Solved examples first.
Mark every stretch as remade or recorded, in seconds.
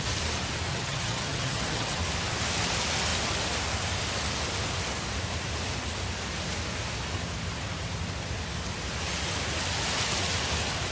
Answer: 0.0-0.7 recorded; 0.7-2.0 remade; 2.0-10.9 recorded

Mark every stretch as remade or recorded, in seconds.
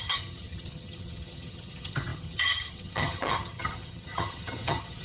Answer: 0.0-5.0 remade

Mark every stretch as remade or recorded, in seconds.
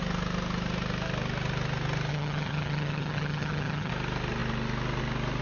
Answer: 0.0-2.1 recorded; 2.1-3.9 remade; 3.9-5.4 recorded